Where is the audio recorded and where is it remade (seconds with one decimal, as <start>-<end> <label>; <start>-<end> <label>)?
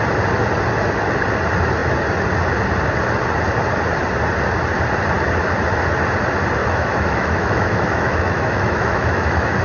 0.0-6.6 recorded; 6.6-9.6 remade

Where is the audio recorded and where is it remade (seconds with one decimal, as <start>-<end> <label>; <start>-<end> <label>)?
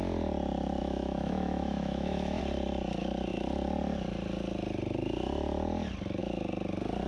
0.0-0.8 recorded; 0.8-2.4 remade; 2.4-7.1 recorded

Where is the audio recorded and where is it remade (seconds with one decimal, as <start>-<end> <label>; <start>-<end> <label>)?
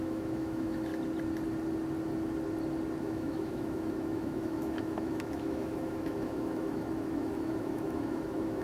0.0-0.9 remade; 0.9-3.0 recorded; 3.0-8.6 remade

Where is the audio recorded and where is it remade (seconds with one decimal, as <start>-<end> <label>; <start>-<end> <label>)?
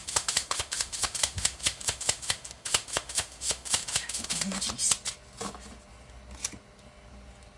0.0-4.6 remade; 4.6-7.6 recorded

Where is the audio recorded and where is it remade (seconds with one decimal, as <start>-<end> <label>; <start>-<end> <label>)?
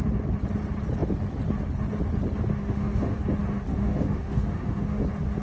0.0-2.6 recorded; 2.6-3.2 remade; 3.2-3.7 recorded; 3.7-5.0 remade; 5.0-5.4 recorded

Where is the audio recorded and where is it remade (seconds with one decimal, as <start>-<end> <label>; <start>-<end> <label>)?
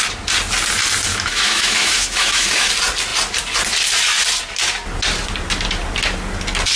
0.0-1.1 recorded; 1.1-2.7 remade; 2.7-6.8 recorded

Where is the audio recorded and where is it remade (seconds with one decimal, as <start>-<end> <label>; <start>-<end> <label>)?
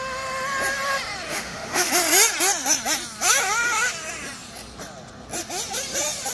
0.0-1.3 recorded; 1.3-1.9 remade; 1.9-6.3 recorded